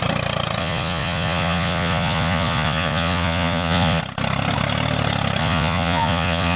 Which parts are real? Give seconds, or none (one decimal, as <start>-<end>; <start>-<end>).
0.0-0.6; 4.0-5.4